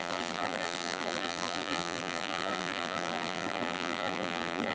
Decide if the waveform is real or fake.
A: fake